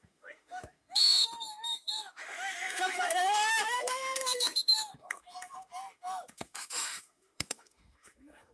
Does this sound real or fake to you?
fake